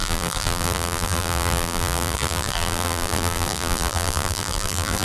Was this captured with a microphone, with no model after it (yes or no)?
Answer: no